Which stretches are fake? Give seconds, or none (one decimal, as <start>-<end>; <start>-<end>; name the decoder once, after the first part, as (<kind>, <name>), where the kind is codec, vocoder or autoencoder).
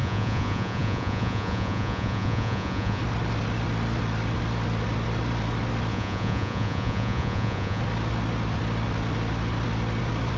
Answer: 0.0-3.0 (vocoder, Vocos); 5.9-7.8